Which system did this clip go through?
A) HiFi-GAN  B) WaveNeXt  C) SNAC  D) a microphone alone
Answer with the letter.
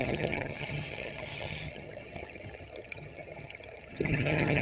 A